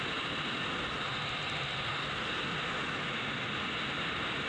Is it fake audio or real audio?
real